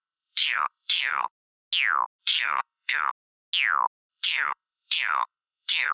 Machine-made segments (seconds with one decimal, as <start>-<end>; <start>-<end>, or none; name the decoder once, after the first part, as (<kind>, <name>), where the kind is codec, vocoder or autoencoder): 0.0-1.3 (codec, SNAC); 2.2-3.1; 4.1-5.9